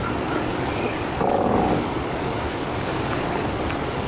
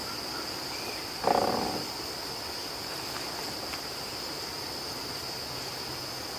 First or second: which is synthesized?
first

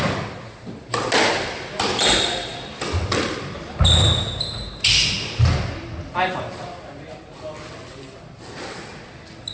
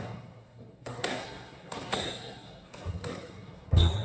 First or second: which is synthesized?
second